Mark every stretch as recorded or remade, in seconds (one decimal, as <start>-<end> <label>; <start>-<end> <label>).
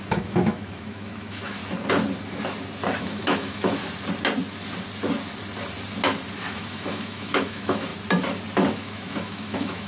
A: 0.0-1.6 remade; 1.6-3.0 recorded; 3.0-3.8 remade; 3.8-6.4 recorded; 6.4-7.9 remade; 7.9-8.7 recorded; 8.7-9.9 remade